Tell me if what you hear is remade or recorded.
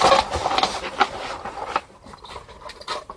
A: recorded